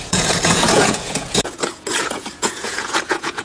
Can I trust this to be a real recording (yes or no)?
no